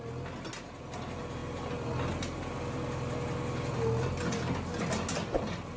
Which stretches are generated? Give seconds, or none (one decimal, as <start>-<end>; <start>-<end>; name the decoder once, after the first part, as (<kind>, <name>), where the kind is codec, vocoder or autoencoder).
none